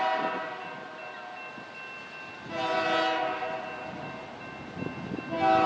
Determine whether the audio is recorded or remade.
recorded